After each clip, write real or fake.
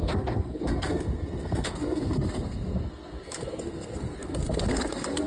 fake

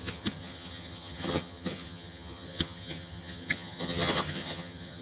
fake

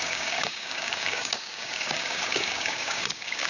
fake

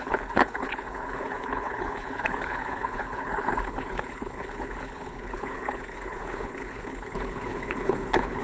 fake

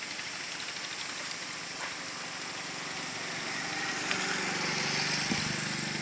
real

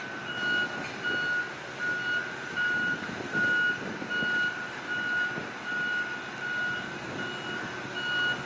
real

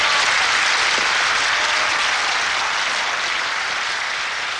real